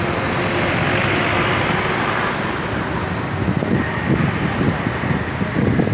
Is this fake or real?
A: real